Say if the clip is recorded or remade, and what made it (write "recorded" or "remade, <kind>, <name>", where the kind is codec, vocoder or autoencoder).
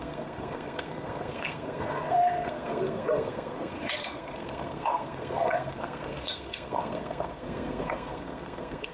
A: remade, codec, SNAC